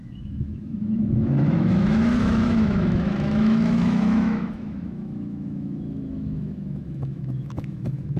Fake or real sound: fake